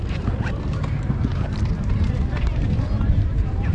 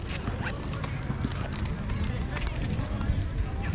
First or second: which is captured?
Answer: second